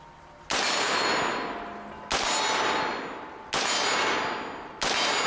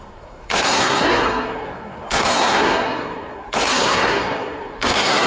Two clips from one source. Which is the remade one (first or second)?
second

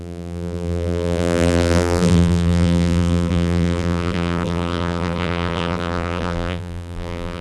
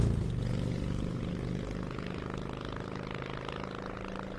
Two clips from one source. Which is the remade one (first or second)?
first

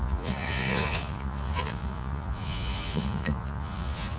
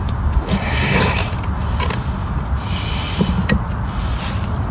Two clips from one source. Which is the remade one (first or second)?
first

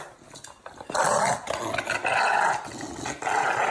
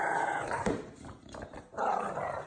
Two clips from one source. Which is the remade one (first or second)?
second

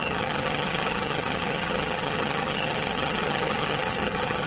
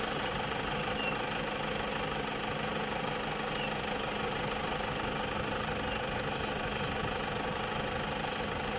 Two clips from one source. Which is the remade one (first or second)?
first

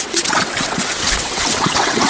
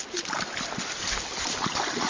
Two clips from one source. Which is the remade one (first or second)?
first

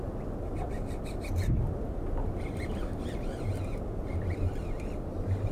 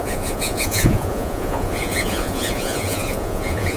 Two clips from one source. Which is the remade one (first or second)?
second